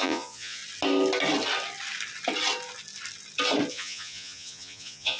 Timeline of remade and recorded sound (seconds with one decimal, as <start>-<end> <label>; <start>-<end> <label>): 0.0-0.6 remade; 0.6-3.7 recorded; 3.7-5.2 remade